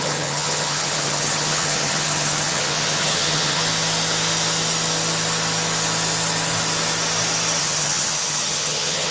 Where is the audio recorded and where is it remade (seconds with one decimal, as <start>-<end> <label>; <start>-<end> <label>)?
0.0-3.6 remade; 3.6-7.6 recorded; 7.6-9.1 remade